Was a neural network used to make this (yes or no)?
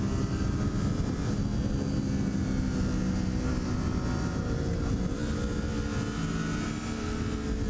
no